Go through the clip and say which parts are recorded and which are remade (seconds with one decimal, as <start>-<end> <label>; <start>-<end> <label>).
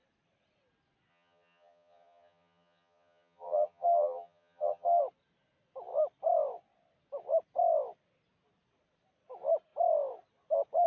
0.0-1.1 recorded; 1.1-5.0 remade; 5.0-10.9 recorded